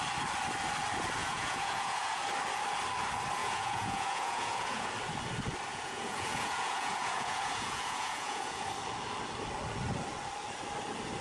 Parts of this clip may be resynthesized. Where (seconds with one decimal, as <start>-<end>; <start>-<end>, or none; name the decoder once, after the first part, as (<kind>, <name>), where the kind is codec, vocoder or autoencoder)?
1.2-2.2 (vocoder, Vocos); 3.4-4.9; 5.7-8.7